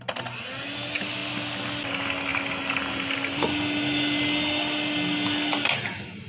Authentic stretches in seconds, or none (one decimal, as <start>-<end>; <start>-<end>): 0.0-6.3